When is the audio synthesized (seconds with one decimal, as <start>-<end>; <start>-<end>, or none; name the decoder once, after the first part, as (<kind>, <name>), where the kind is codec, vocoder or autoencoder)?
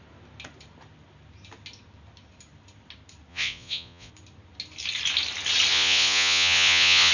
3.3-4.1 (vocoder, Vocos); 5.7-7.1